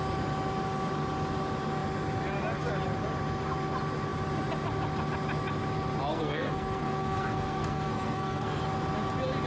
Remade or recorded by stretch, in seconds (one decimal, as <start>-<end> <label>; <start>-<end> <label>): 0.0-6.1 recorded; 6.1-8.6 remade; 8.6-9.5 recorded